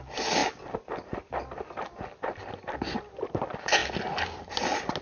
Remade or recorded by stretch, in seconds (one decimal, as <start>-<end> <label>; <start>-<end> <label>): 0.0-5.0 recorded